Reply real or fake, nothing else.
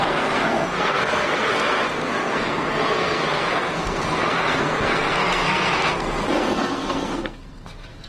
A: fake